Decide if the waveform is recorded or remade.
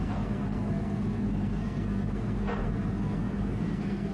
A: remade